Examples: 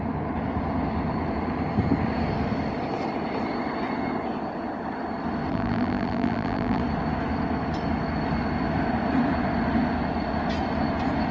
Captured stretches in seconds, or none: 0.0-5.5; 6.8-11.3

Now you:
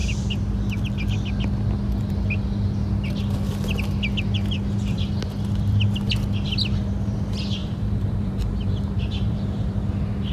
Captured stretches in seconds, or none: 0.0-7.6; 9.8-10.3

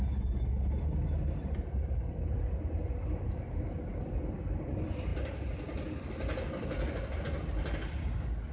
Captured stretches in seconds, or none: 0.0-8.5

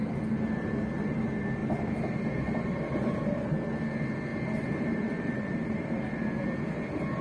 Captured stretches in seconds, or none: 0.0-4.3; 6.0-7.2

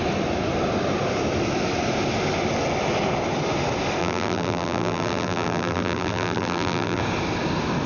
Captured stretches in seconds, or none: 0.0-4.0; 7.0-7.9

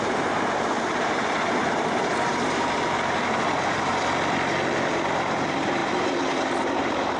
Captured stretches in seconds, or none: 3.9-4.9

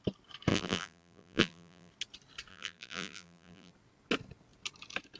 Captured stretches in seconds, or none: 0.0-0.5; 1.9-2.5; 3.7-5.2